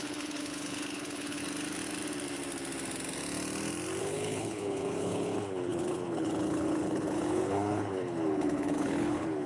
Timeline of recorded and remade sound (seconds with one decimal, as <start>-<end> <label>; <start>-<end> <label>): 0.0-1.4 remade; 1.4-4.0 recorded; 4.0-9.5 remade